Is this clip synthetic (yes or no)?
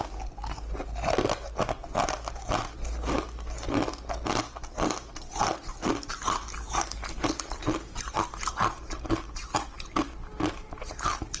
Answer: no